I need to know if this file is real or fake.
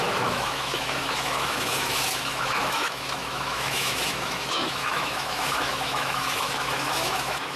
fake